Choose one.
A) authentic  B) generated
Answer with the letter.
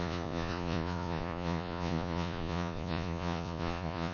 B